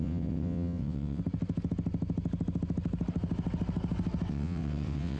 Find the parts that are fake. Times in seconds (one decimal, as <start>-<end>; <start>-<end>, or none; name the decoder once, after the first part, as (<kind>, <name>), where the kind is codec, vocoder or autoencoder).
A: 0.0-1.2 (vocoder, WaveNeXt); 4.3-5.2